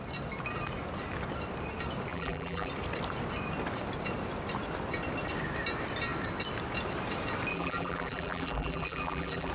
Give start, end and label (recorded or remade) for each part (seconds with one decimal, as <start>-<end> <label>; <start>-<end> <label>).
0.0-2.1 recorded; 2.1-2.7 remade; 2.7-7.5 recorded; 7.5-9.5 remade